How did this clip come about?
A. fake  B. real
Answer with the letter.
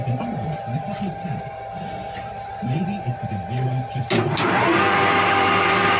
A